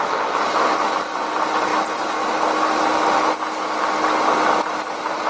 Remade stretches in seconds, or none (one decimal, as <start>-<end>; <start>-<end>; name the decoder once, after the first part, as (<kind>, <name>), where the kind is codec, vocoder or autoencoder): none